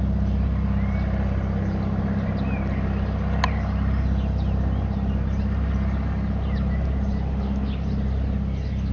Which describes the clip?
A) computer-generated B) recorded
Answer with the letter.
B